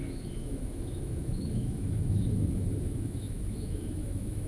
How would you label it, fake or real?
fake